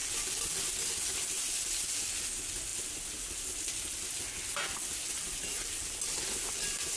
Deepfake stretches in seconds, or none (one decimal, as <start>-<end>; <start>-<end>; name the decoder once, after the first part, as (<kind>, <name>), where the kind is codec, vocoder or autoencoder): none